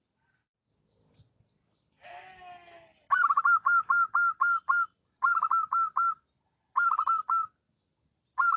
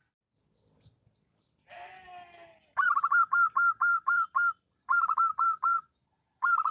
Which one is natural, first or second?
first